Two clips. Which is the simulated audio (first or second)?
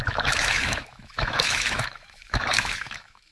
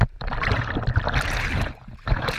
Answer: first